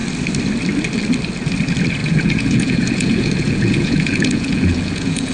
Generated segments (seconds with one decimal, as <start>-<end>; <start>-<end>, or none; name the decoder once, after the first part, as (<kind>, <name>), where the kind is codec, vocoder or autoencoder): 2.0-5.3 (vocoder, Vocos)